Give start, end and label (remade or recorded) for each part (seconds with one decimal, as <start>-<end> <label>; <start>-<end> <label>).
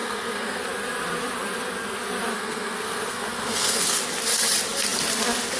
0.0-0.6 remade; 0.6-2.3 recorded; 2.3-4.0 remade; 4.0-5.6 recorded